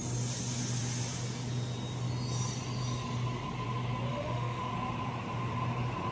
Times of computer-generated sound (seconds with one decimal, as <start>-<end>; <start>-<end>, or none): 4.1-4.7

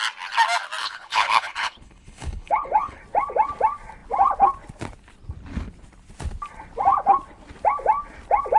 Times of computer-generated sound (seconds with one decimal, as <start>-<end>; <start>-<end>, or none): 0.8-3.0

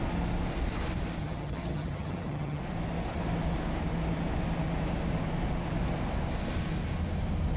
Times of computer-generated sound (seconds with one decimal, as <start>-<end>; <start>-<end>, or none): 1.2-2.6

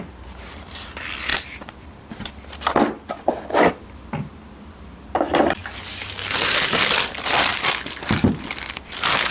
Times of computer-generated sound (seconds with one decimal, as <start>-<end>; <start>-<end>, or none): 0.0-5.6; 6.7-7.5; 8.0-9.3

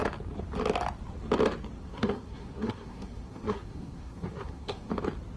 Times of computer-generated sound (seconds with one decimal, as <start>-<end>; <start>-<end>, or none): 1.8-4.9

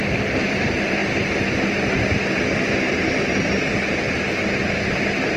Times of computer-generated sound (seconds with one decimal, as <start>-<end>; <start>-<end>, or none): none

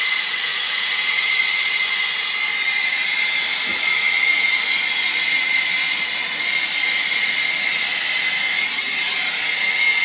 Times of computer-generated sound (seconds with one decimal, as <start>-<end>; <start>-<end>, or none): 0.5-1.8; 3.7-8.0

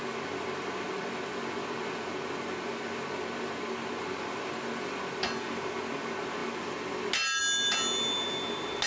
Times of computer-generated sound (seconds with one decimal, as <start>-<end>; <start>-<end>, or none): none